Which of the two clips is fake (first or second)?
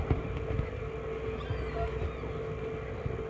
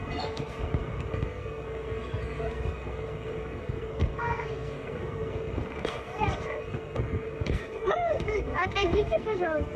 second